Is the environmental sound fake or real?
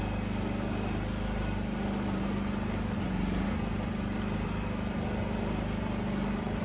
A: real